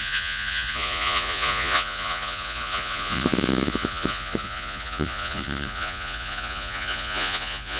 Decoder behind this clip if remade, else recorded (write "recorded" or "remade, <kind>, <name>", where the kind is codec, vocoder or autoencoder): remade, vocoder, Vocos